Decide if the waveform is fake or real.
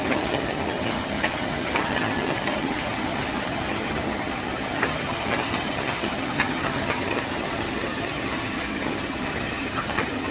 fake